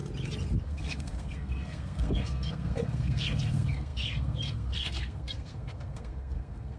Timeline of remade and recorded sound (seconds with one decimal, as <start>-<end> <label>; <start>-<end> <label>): 0.0-0.6 recorded; 0.6-6.8 remade